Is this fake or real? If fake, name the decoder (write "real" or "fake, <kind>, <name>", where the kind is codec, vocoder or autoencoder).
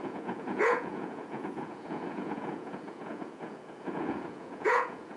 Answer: fake, vocoder, Vocos